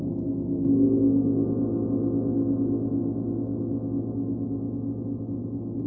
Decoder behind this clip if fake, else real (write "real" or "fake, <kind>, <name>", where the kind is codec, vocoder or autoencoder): real